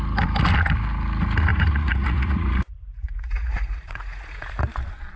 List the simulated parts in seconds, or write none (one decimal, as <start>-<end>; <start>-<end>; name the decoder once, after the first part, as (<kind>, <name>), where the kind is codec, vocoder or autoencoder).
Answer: 1.5-4.6 (vocoder, Vocos)